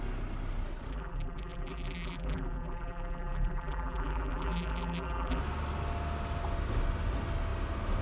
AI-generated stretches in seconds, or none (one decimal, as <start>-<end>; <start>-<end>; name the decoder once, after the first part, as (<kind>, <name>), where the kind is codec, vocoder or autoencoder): 0.9-5.4 (vocoder, BigVGAN v2)